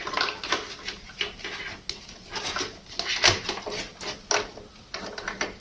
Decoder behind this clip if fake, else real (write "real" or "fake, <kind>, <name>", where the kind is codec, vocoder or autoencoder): real